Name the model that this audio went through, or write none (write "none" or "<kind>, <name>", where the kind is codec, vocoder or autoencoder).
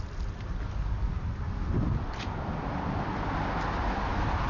none